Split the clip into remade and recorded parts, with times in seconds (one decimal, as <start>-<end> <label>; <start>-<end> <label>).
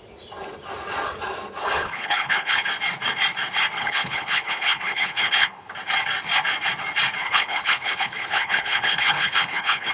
0.0-1.6 recorded; 1.6-2.7 remade; 2.7-3.8 recorded; 3.8-5.7 remade; 5.7-7.2 recorded; 7.2-9.9 remade